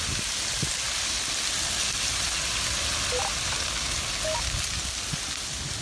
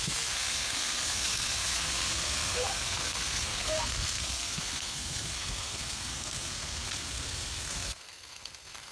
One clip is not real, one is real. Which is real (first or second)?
first